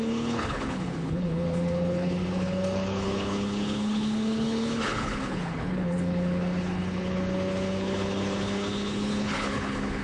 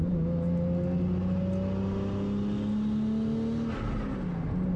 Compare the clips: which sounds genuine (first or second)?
second